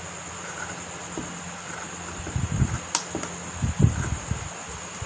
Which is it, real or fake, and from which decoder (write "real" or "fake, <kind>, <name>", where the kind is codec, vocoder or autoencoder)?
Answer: real